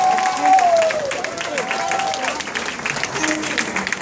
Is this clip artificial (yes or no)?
no